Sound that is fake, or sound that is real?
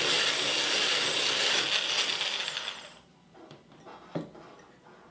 real